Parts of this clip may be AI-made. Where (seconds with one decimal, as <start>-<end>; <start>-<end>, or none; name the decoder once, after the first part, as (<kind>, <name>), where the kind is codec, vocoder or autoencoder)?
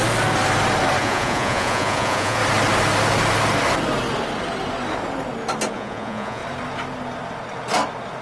1.0-2.4 (vocoder, Vocos); 5.7-6.4